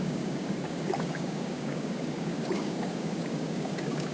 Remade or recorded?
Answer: remade